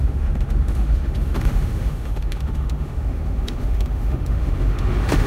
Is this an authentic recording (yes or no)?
no